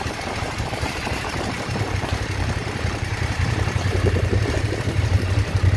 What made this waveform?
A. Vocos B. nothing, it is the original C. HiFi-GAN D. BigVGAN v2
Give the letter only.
D